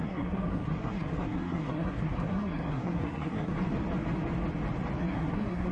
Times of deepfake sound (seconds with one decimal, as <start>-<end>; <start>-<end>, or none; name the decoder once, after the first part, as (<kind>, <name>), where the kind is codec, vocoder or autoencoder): 0.0-3.5 (codec, SNAC); 5.0-5.7